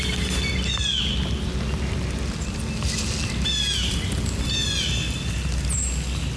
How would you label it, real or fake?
real